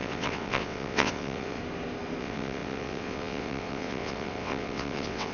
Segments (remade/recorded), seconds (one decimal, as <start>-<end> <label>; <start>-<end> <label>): 0.0-1.6 remade; 1.6-2.2 recorded; 2.2-5.3 remade